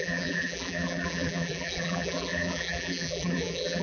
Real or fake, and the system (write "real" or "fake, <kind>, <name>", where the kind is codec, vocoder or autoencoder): fake, vocoder, BigVGAN v2